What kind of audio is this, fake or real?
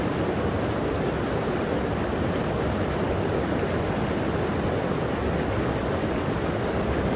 real